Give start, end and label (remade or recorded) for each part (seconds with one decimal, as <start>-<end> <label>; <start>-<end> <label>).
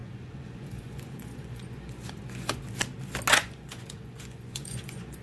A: 0.0-2.6 remade; 2.6-3.3 recorded; 3.3-5.2 remade